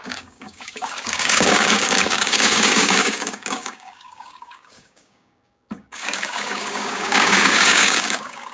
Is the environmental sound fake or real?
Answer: fake